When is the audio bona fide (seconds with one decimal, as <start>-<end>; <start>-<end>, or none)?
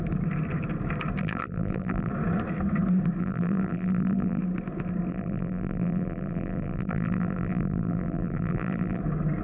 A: 0.0-1.2; 2.1-3.2; 4.4-5.1; 9.0-9.4